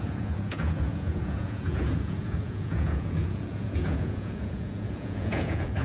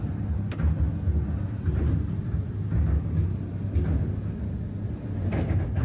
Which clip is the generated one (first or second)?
first